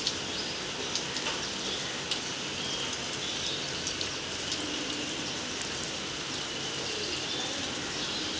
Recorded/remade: recorded